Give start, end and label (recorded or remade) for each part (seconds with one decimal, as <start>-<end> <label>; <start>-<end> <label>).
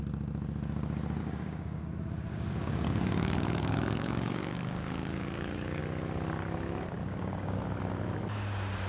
0.0-1.2 recorded; 1.2-1.8 remade; 1.8-2.3 recorded; 2.3-5.8 remade; 5.8-7.0 recorded; 7.0-7.6 remade; 7.6-8.9 recorded